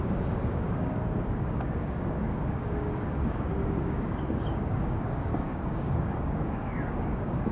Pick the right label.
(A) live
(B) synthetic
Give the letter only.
B